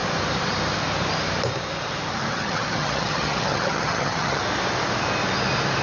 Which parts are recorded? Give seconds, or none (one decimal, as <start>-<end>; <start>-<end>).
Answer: 0.0-2.3; 4.4-5.8